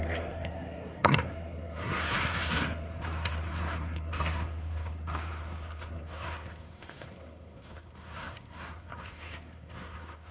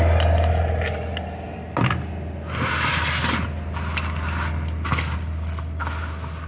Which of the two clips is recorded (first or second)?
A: second